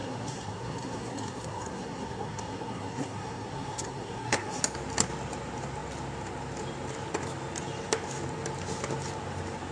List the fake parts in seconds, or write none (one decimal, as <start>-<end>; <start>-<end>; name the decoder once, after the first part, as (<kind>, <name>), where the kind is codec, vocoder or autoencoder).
0.0-4.6 (codec, SNAC)